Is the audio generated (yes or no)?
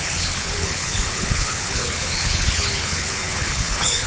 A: yes